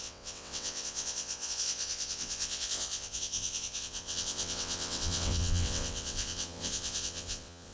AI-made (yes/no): yes